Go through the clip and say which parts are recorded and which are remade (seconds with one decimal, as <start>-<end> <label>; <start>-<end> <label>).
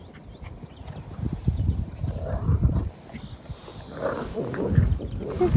0.0-0.8 recorded; 0.8-1.5 remade; 1.5-2.0 recorded; 2.0-2.7 remade; 2.7-3.7 recorded; 3.7-4.8 remade; 4.8-5.6 recorded